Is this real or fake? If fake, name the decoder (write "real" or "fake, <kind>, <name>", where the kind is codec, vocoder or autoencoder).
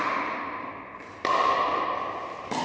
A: real